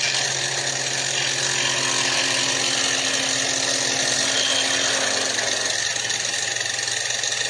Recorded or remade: recorded